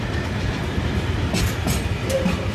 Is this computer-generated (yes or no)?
no